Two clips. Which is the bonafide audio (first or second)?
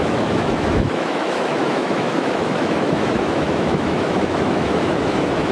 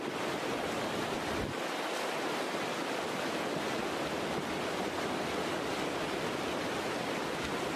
second